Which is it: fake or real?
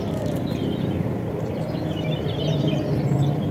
fake